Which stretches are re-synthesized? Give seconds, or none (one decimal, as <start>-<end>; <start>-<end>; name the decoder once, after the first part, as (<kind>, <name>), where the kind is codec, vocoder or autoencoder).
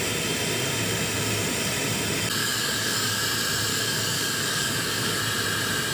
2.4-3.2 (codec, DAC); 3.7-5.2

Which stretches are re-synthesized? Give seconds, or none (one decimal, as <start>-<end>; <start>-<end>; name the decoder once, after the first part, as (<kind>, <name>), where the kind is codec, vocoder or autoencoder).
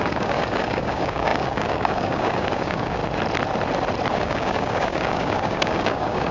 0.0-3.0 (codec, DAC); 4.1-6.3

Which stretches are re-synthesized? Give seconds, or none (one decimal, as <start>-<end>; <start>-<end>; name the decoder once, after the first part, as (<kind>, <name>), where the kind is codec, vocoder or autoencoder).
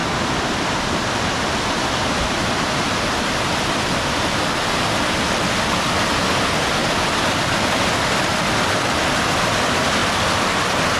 none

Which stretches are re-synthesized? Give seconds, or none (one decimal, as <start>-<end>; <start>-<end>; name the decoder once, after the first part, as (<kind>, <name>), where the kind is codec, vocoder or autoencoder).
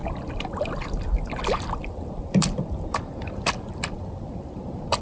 none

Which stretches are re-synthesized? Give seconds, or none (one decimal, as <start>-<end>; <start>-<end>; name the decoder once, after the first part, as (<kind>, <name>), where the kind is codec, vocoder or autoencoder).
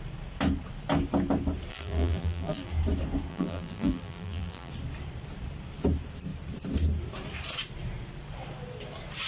1.7-2.7 (vocoder, BigVGAN v2); 3.3-4.7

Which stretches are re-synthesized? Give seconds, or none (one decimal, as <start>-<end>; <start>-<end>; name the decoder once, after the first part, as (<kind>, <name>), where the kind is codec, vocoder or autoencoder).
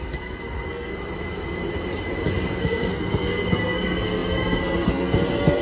0.0-0.9 (codec, SNAC); 2.6-5.6